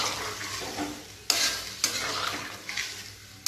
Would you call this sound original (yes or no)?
yes